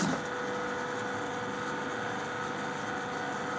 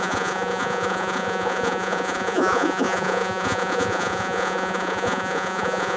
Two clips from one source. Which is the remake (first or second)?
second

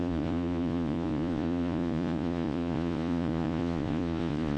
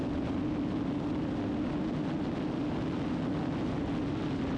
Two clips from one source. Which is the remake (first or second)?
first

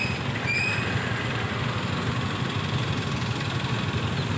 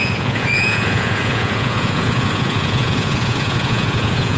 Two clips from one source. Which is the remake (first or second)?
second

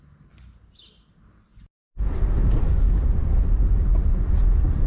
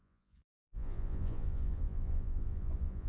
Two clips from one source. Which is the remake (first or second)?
second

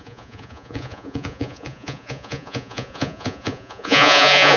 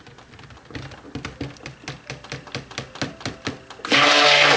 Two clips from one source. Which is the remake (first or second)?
first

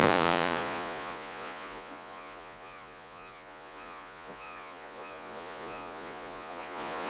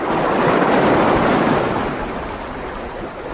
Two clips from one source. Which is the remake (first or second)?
first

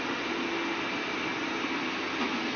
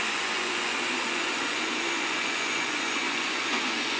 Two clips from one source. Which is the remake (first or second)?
second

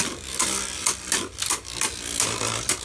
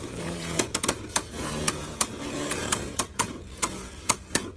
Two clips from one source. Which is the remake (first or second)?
second